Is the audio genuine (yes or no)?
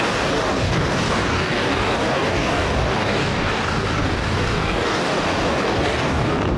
no